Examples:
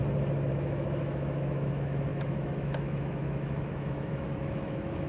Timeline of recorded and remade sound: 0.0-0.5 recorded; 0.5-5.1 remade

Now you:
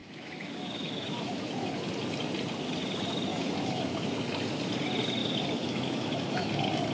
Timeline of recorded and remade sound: 0.0-1.7 remade; 1.7-3.3 recorded; 3.3-4.2 remade; 4.2-5.2 recorded; 5.2-6.5 remade; 6.5-6.9 recorded

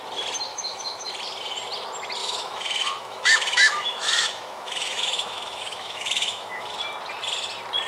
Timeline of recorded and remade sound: 0.0-0.5 recorded; 0.5-1.1 remade; 1.1-2.2 recorded; 2.2-6.8 remade; 6.8-7.9 recorded

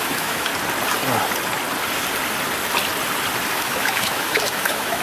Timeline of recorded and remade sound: 0.0-0.5 remade; 0.5-3.5 recorded; 3.5-5.0 remade

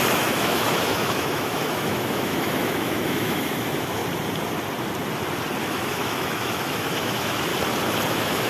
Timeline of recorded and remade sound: 0.0-4.0 remade; 4.0-5.6 recorded; 5.6-7.5 remade; 7.5-8.1 recorded; 8.1-8.5 remade

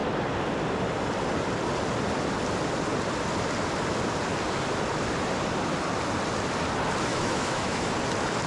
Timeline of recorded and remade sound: 0.0-7.1 recorded; 7.1-7.9 remade; 7.9-8.5 recorded

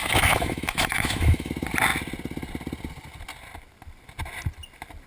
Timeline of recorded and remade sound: 0.0-1.5 remade; 1.5-5.1 recorded

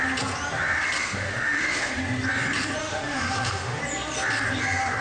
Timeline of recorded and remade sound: 0.0-1.0 recorded; 1.0-2.0 remade; 2.0-2.8 recorded; 2.8-3.8 remade; 3.8-5.0 recorded